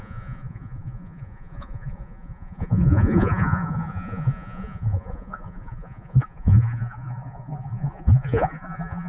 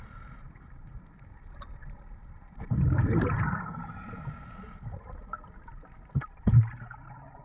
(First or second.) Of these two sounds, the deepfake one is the first